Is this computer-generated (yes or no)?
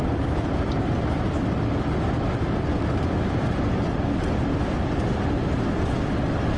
no